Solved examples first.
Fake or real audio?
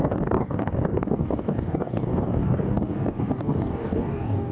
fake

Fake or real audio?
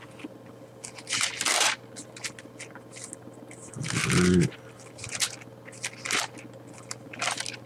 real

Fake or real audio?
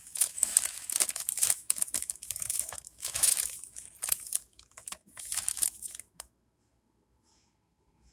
fake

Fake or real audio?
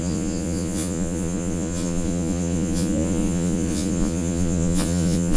fake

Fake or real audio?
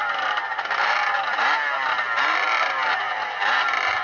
real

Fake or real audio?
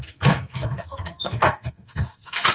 fake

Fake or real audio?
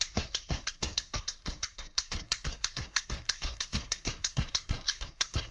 fake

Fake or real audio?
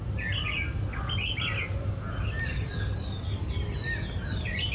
real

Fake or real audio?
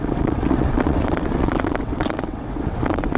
fake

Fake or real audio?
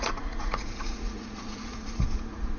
fake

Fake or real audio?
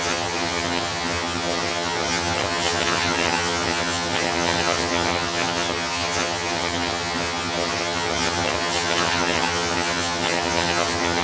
fake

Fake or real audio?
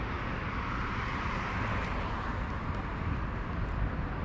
real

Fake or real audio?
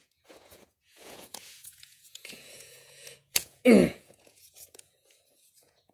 fake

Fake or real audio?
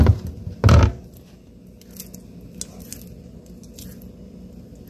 real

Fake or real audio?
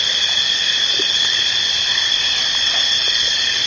real